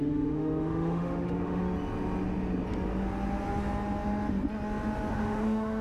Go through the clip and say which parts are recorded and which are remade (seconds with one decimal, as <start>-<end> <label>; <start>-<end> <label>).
0.0-1.6 remade; 1.6-5.1 recorded; 5.1-5.8 remade